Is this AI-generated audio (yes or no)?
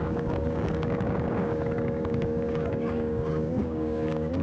yes